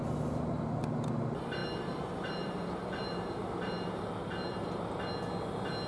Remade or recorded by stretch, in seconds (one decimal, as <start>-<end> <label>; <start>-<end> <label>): 0.0-1.6 recorded; 1.6-5.1 remade; 5.1-5.9 recorded